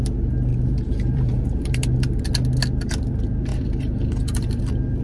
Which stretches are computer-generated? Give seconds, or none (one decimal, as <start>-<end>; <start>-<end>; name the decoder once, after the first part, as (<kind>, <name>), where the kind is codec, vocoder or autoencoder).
0.5-2.2 (vocoder, BigVGAN v2); 3.5-4.6